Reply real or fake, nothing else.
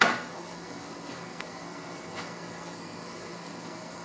fake